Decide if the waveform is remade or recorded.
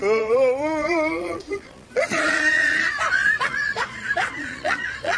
remade